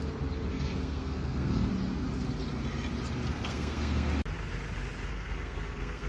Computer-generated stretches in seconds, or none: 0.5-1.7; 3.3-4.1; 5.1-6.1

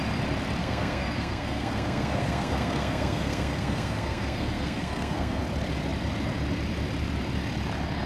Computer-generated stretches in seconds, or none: 0.6-5.4

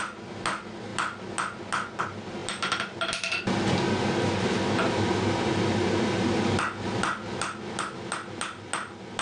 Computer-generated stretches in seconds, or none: none

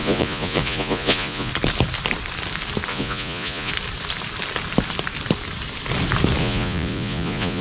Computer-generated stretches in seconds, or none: 0.0-1.5; 2.9-3.7; 6.4-7.6

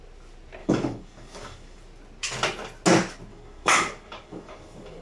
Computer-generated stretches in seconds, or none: 0.6-1.8; 3.3-5.0

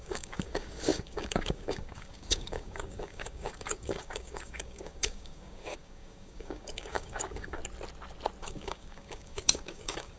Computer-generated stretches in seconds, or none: 0.0-7.6; 8.4-10.2